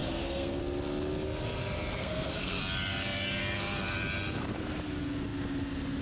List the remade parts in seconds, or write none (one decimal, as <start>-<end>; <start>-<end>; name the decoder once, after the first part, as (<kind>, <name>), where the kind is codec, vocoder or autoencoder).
0.0-0.6 (codec, SNAC); 2.0-2.6